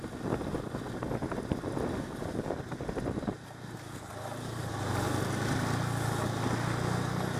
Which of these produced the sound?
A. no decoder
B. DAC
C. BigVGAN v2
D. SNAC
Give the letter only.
A